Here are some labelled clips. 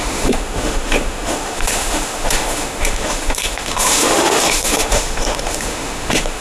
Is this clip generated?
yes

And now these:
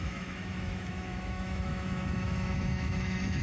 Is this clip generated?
yes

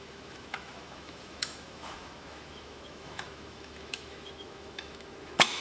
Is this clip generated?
yes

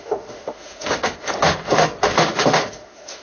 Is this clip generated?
yes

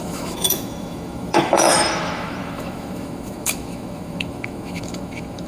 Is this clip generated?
yes